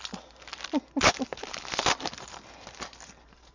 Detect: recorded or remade recorded